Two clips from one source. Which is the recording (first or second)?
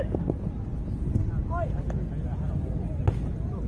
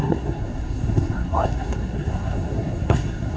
first